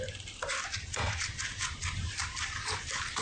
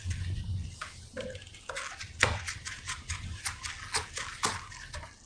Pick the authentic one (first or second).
second